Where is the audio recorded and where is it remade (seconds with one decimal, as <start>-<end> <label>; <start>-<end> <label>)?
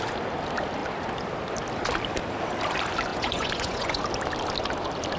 0.0-3.1 recorded; 3.1-4.0 remade; 4.0-5.2 recorded